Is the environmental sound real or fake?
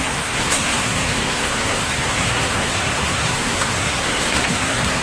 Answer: fake